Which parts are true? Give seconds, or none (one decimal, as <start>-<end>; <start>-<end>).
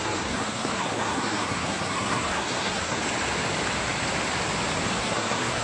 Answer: 3.0-5.0